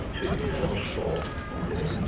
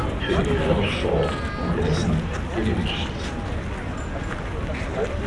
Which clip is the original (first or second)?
second